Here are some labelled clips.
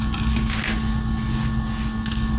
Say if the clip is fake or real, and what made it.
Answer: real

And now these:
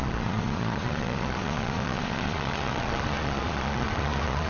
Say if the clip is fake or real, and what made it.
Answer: fake, vocoder, Vocos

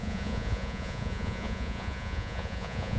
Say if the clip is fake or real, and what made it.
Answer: fake, vocoder, Vocos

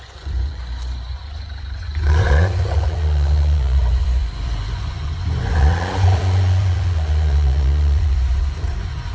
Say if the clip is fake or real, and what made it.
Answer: fake, vocoder, Vocos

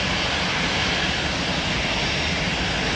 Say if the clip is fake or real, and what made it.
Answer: real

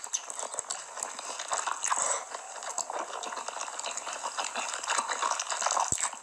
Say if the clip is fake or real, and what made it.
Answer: real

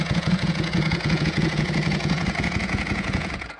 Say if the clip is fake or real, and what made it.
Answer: fake, vocoder, Vocos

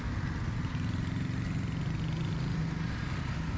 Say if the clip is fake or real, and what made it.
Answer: real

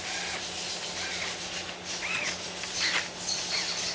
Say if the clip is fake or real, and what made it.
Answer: real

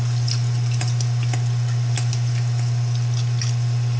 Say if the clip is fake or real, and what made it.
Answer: real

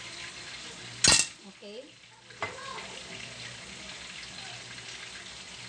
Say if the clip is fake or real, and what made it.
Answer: real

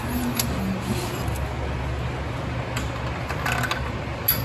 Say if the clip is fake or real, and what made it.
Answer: real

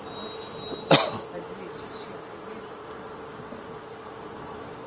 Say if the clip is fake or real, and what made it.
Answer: real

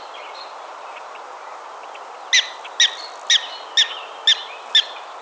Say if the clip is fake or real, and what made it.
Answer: real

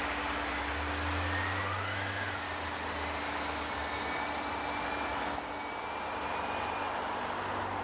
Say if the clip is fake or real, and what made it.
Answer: real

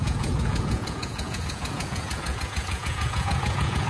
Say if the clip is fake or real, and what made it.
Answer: fake, vocoder, Vocos